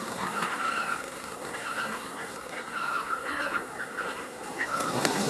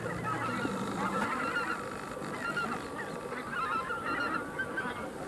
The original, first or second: second